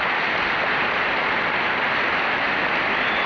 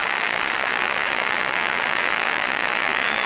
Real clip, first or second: first